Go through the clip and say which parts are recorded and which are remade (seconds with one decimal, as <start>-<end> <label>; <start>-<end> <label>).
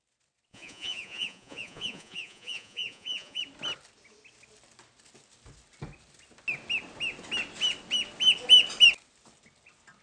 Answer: 0.0-0.5 recorded; 0.5-3.4 remade; 3.4-10.0 recorded